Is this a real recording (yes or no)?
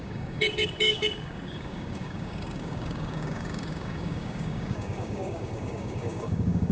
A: no